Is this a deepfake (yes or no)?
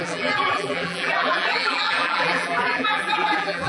yes